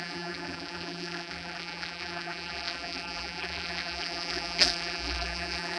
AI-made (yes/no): yes